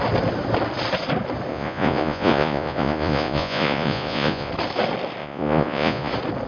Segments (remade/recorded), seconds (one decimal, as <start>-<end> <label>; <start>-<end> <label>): 0.0-1.5 recorded; 1.5-4.5 remade; 4.5-5.2 recorded; 5.2-6.1 remade; 6.1-6.5 recorded